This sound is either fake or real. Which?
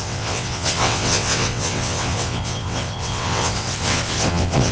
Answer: fake